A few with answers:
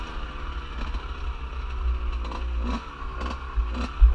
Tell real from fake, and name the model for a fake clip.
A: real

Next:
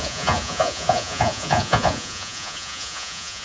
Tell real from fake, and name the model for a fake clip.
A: fake, vocoder, Vocos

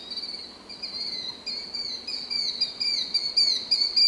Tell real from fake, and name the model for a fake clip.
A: real